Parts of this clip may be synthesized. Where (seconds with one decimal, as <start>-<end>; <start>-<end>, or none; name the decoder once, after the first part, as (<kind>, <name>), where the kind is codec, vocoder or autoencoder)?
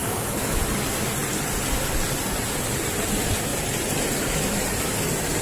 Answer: 0.0-0.6 (autoencoder, DAC-VAE)